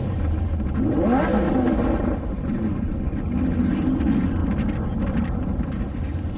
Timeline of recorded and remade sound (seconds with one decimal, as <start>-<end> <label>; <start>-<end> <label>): 0.0-6.4 recorded